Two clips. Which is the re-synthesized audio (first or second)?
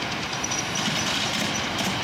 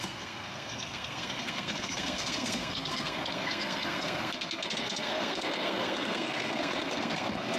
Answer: second